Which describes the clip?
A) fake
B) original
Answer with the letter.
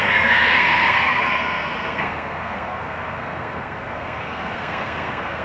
A